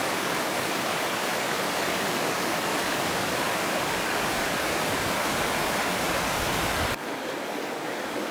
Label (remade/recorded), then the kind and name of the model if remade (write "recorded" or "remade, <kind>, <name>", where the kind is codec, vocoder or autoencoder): remade, codec, DAC